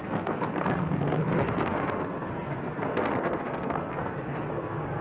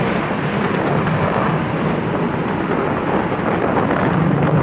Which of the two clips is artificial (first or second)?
first